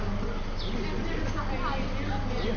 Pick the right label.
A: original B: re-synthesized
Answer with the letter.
A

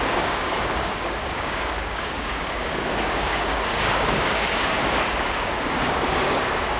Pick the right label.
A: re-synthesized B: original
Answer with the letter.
A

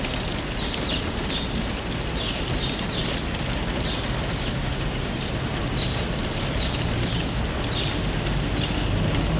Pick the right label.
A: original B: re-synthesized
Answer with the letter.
A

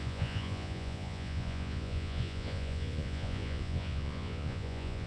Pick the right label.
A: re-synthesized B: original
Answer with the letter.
A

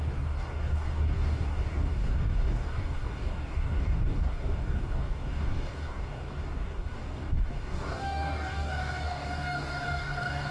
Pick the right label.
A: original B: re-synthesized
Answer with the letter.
B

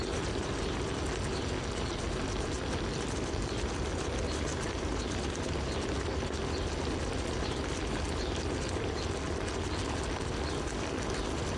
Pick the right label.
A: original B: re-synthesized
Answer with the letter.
A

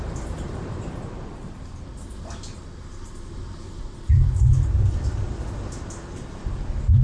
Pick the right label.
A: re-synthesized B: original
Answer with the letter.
B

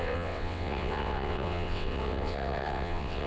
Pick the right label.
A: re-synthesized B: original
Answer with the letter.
A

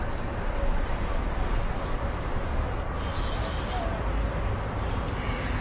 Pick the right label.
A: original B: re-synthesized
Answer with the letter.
A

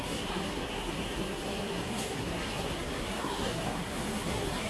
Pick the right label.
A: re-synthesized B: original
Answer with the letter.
A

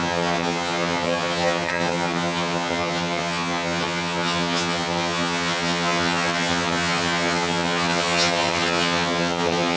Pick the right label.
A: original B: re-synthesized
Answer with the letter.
B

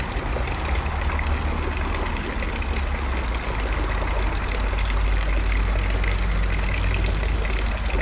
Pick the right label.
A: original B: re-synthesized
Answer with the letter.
A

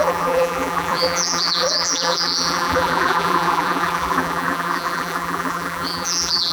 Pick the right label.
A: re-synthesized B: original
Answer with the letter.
A